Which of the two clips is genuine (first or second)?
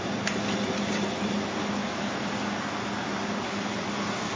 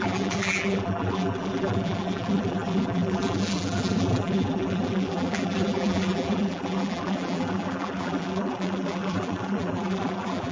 first